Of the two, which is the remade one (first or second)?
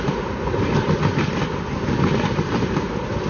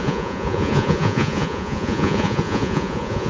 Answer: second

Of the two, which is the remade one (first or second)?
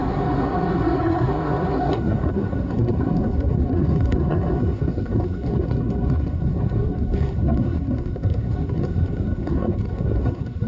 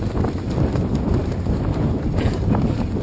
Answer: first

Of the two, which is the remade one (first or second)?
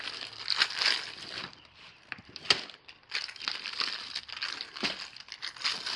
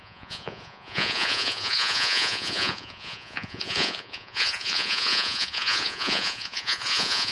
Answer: second